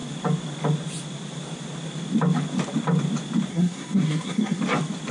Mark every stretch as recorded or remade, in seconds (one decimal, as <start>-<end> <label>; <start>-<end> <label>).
0.0-3.5 recorded; 3.5-4.6 remade; 4.6-5.1 recorded